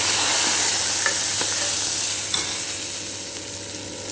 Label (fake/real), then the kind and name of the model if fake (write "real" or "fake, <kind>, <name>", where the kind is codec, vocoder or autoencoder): real